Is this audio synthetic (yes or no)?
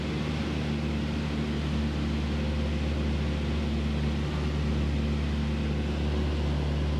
no